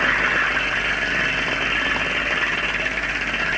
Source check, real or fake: real